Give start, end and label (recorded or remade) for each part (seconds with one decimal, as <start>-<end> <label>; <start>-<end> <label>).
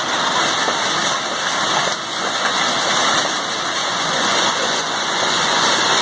0.0-2.1 recorded; 2.1-2.6 remade; 2.6-3.8 recorded; 3.8-6.0 remade